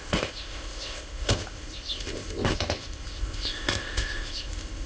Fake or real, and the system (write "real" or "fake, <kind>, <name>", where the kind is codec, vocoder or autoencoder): fake, codec, ZipCodec